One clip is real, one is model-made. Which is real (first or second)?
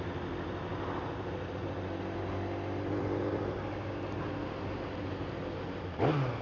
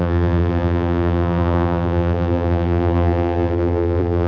first